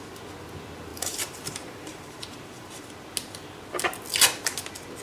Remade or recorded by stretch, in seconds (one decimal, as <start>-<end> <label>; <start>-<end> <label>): 0.0-0.9 recorded; 0.9-2.8 remade; 2.8-5.0 recorded